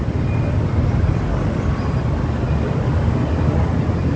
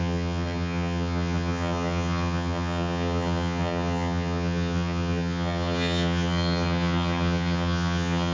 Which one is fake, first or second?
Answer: second